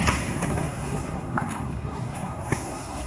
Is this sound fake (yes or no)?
yes